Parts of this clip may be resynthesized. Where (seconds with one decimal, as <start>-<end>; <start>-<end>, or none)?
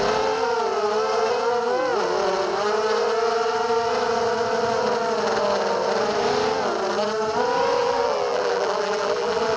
7.8-9.6